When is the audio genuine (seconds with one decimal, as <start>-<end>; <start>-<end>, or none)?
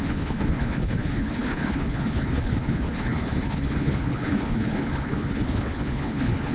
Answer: none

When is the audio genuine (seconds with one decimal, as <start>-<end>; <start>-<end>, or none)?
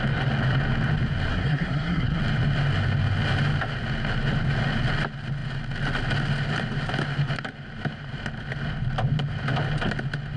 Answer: 0.0-1.3; 2.2-10.4